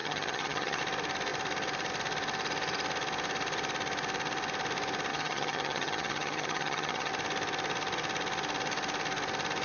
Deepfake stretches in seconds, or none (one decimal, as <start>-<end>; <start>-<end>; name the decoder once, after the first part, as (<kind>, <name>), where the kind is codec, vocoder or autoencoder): 0.0-0.8 (vocoder, HiFi-GAN); 5.1-7.1